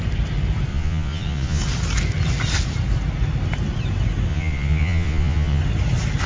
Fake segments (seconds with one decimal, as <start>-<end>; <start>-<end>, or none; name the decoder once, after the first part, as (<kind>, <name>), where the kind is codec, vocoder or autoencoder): 0.7-1.6 (vocoder, Vocos); 4.3-5.6